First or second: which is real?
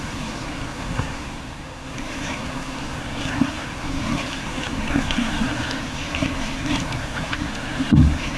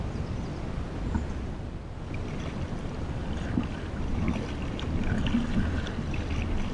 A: second